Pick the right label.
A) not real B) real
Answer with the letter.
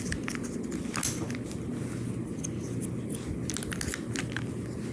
B